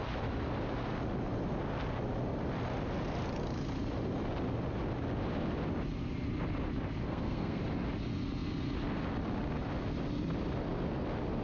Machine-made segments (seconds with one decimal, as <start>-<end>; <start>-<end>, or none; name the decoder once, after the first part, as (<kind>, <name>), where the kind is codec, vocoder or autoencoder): 7.0-7.6 (codec, SNAC)